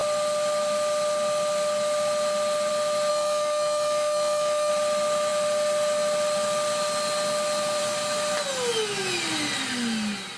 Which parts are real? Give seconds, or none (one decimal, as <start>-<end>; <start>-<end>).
0.0-3.1; 4.7-10.4